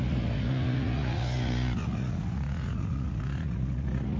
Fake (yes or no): yes